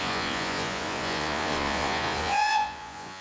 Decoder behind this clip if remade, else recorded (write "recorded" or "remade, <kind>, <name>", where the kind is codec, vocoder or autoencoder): remade, vocoder, Vocos